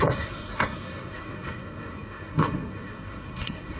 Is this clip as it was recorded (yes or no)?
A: no